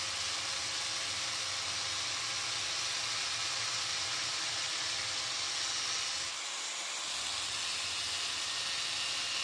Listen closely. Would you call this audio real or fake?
real